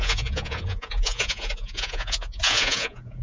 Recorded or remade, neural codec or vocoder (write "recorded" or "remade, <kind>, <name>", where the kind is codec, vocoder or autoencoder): remade, vocoder, Vocos